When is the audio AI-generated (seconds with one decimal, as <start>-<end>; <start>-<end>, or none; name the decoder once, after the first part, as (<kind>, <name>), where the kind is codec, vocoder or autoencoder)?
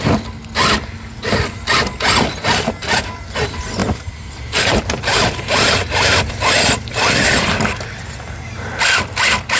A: none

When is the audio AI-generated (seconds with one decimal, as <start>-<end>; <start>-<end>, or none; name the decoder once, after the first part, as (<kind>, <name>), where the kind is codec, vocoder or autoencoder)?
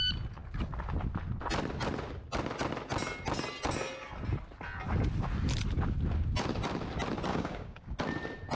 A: 7.3-8.0 (codec, DAC)